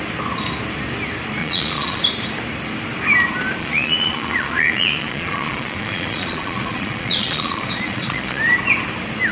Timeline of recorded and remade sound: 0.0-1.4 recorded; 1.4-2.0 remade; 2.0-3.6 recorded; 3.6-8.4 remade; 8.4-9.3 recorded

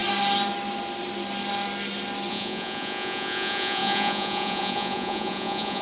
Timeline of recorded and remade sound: 0.0-2.3 recorded; 2.3-5.8 remade